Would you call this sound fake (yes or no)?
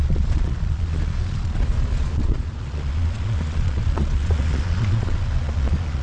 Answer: yes